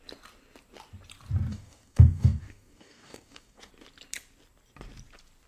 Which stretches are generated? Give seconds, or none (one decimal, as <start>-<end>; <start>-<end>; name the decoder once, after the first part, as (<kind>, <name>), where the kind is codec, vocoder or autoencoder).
1.5-3.7 (codec, DAC)